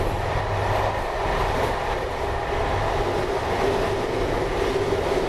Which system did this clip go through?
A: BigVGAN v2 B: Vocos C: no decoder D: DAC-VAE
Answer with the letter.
C